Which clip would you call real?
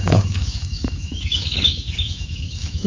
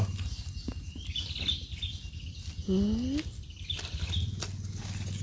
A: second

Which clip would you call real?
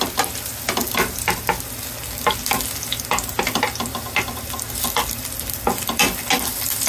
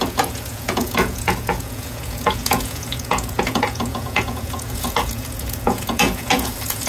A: first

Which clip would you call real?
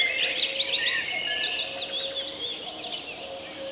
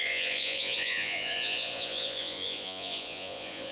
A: first